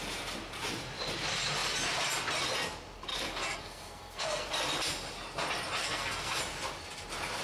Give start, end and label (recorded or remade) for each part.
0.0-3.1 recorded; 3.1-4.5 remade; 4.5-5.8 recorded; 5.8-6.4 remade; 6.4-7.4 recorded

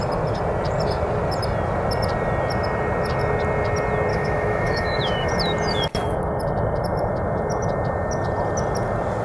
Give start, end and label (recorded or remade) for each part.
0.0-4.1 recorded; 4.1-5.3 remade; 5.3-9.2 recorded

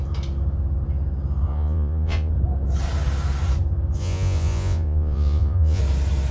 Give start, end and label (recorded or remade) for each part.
0.0-1.5 recorded; 1.5-2.3 remade; 2.3-4.0 recorded; 4.0-5.8 remade; 5.8-6.3 recorded

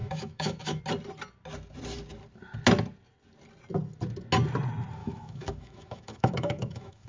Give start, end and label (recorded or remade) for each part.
0.0-0.8 remade; 0.8-5.0 recorded; 5.0-7.1 remade

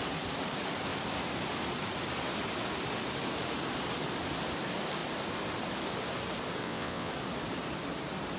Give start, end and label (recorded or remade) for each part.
0.0-6.6 recorded; 6.6-7.1 remade; 7.1-8.4 recorded